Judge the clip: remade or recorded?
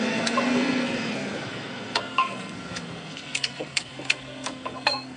remade